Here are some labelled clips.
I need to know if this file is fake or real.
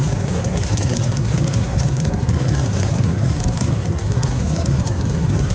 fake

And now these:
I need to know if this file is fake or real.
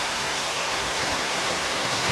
fake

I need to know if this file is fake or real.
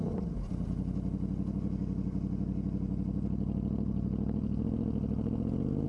real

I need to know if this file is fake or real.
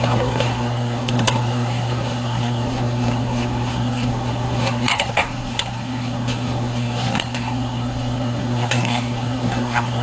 fake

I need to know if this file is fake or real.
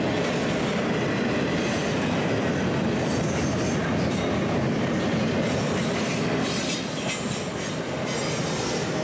real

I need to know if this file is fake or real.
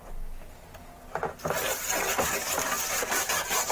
real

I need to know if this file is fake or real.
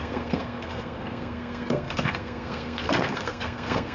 fake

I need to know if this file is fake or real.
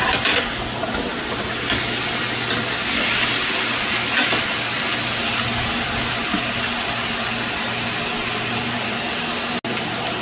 real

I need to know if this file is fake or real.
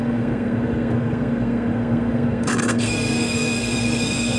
fake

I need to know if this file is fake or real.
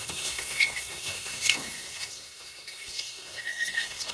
fake